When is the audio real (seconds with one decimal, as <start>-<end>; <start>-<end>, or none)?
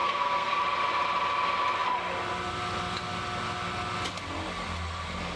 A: 0.6-5.4